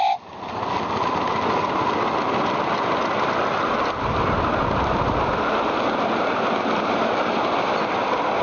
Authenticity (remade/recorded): recorded